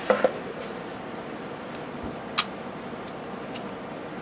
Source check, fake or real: real